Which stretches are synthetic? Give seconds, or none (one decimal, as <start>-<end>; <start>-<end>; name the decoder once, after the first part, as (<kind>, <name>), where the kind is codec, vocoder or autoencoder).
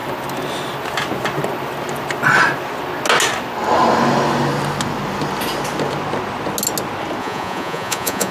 7.2-8.3 (vocoder, Vocos)